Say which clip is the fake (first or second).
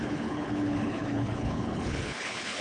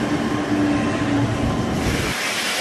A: first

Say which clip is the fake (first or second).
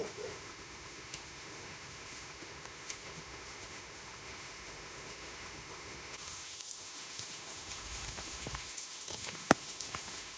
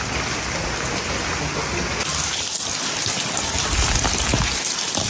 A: first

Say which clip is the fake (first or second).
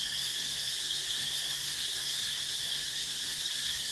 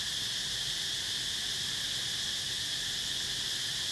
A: first